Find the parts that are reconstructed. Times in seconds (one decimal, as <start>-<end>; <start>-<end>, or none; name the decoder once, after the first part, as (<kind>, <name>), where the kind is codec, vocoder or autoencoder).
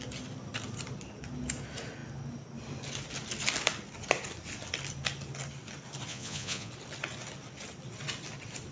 6.1-6.7 (vocoder, Vocos)